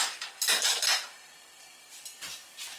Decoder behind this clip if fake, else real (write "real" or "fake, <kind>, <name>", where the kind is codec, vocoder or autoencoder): real